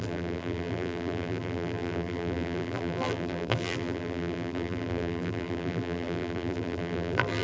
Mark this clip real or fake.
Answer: fake